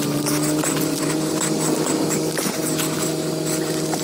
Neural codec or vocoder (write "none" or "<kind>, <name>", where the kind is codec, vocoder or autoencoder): none